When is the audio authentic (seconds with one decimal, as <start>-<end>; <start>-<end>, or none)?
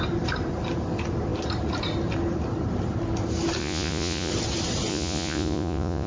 0.0-3.6; 4.3-4.9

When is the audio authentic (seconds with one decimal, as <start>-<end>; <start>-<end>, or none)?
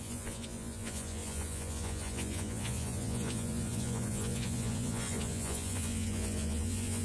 none